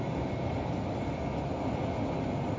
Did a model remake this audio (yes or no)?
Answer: no